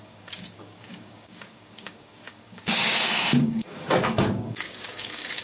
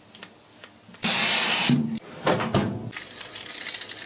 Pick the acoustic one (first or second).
second